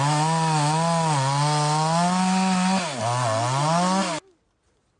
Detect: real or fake real